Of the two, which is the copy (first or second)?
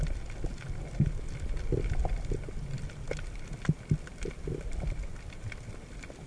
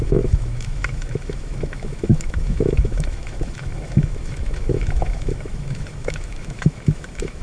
second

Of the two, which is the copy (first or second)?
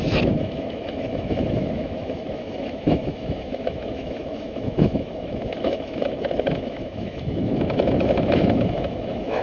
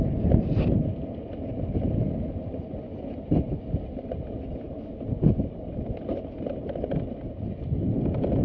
first